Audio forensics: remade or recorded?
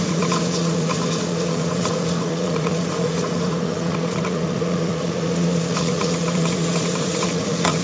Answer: remade